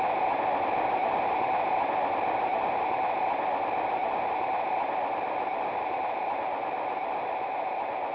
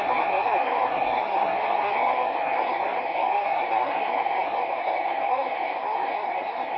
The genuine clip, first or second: first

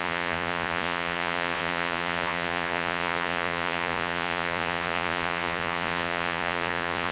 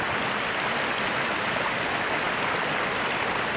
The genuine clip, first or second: second